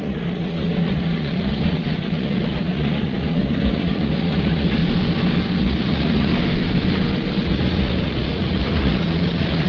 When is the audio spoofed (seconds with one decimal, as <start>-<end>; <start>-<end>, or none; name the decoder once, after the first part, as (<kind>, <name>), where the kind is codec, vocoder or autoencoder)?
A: 0.0-4.8 (vocoder, Vocos); 5.6-6.3; 7.3-9.7